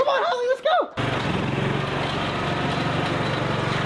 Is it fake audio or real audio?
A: real